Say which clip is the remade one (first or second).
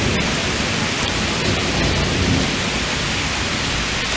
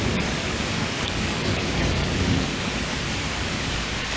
second